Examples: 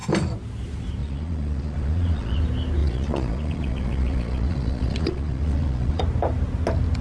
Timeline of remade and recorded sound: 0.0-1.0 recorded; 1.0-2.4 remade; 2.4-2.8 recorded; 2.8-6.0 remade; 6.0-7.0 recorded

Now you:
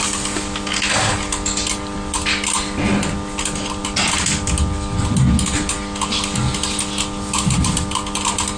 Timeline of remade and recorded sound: 0.0-8.6 recorded

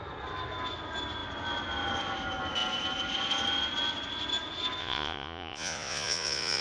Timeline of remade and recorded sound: 0.0-4.8 recorded; 4.8-6.6 remade

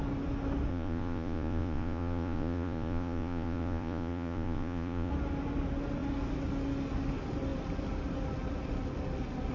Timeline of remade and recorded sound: 0.0-0.7 recorded; 0.7-5.1 remade; 5.1-9.5 recorded

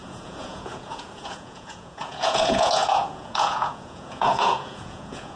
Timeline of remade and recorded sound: 0.0-5.4 remade

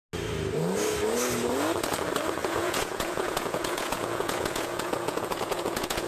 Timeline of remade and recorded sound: 0.0-2.4 recorded; 2.4-6.1 remade

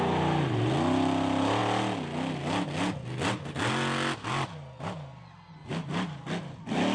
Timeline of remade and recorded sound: 0.0-6.9 recorded